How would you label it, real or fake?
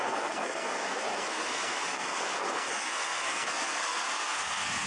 fake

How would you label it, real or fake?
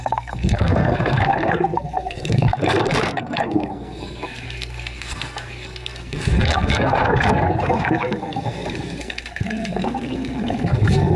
fake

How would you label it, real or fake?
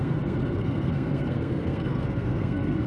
fake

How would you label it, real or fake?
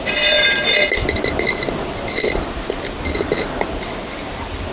real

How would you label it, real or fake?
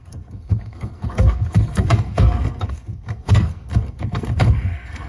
fake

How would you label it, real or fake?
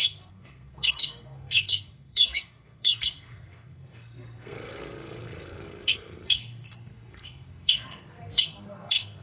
fake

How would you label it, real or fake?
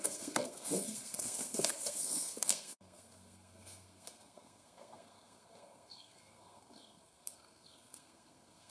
fake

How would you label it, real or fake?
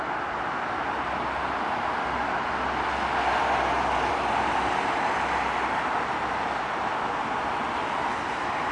real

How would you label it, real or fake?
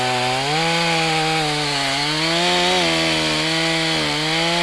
real